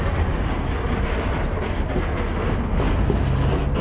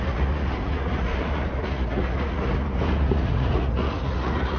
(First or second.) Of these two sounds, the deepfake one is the second